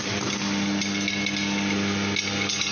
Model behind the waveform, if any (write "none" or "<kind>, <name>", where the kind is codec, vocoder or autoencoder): none